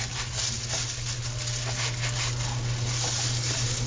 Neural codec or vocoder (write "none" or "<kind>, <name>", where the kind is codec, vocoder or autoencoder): none